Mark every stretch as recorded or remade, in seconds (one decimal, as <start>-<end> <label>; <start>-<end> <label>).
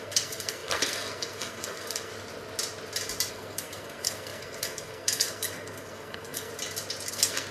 0.0-2.1 remade; 2.1-3.3 recorded; 3.3-6.5 remade; 6.5-7.1 recorded; 7.1-7.5 remade